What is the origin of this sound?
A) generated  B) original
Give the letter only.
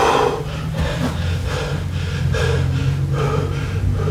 B